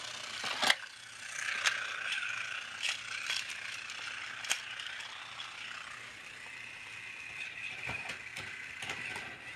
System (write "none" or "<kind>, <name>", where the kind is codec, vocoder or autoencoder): none